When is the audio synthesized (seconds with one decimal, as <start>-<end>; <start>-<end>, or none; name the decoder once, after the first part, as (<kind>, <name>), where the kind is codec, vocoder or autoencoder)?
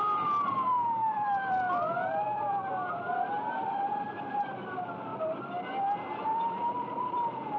1.0-2.9 (vocoder, BigVGAN v2); 5.1-7.6